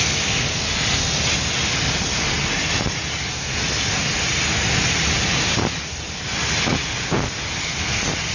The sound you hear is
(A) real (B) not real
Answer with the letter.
A